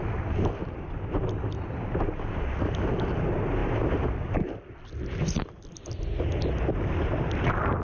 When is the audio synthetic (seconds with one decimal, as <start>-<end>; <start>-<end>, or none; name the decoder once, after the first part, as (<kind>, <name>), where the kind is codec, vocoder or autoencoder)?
none